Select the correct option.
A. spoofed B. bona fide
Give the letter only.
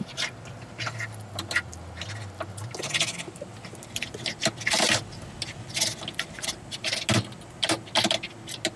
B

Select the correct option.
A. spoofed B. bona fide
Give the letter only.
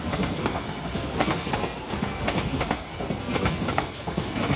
A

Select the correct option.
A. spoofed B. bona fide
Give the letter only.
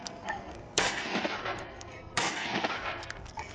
A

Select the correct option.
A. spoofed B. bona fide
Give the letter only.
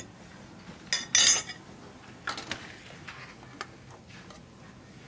B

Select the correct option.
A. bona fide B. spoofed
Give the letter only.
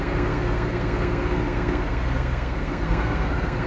B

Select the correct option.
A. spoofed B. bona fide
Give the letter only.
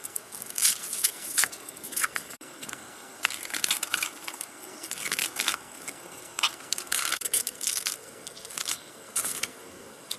A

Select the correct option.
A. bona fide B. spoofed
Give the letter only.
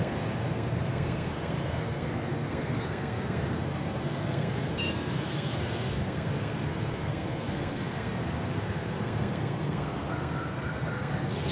B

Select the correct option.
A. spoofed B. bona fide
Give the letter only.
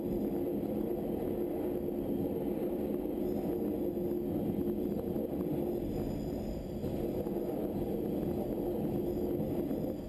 B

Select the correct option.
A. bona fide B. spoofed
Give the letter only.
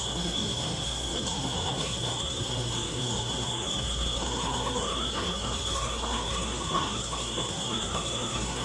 B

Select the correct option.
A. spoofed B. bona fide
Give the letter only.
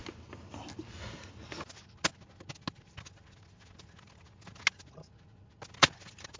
B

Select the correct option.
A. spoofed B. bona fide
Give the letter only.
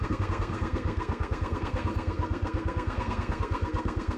A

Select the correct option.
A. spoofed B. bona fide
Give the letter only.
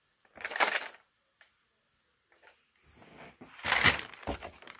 B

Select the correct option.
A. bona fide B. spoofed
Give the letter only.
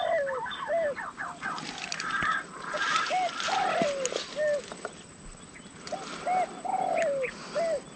A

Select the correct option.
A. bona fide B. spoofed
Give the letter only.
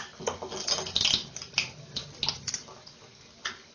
A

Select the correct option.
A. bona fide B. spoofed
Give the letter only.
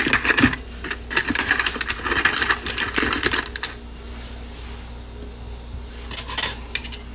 A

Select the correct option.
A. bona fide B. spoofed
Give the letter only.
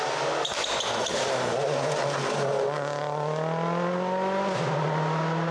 A